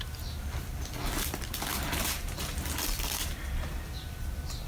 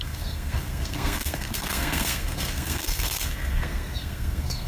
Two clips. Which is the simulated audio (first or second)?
second